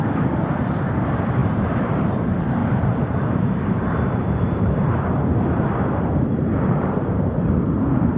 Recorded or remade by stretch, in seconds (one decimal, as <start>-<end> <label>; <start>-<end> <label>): 0.0-1.4 recorded; 1.4-2.1 remade; 2.1-2.6 recorded; 2.6-7.5 remade; 7.5-8.2 recorded